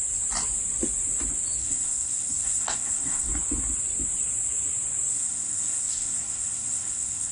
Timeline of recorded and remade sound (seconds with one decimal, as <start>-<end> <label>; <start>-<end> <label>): 0.0-1.6 recorded; 1.6-3.3 remade; 3.3-5.1 recorded; 5.1-7.3 remade

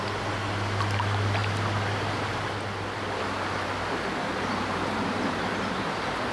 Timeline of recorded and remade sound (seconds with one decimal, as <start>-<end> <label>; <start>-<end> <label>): 0.0-1.4 recorded; 1.4-3.6 remade; 3.6-4.6 recorded; 4.6-5.7 remade; 5.7-6.3 recorded

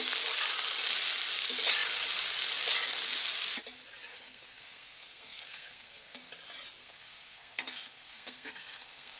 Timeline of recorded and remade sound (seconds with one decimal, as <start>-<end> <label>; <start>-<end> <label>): 0.0-4.1 recorded; 4.1-6.3 remade; 6.3-6.8 recorded; 6.8-9.2 remade

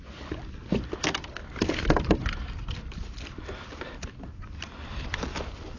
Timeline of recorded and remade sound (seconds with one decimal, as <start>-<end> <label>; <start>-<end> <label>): 0.0-5.8 recorded

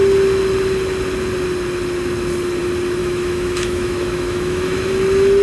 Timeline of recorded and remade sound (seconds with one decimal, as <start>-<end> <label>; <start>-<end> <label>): 0.0-3.0 recorded; 3.0-4.9 remade; 4.9-5.4 recorded

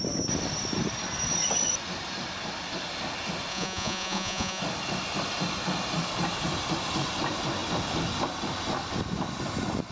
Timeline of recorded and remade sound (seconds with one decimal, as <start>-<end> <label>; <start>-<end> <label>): 0.0-3.5 recorded; 3.5-4.6 remade; 4.6-9.9 recorded